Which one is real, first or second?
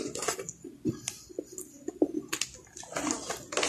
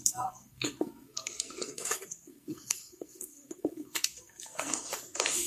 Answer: first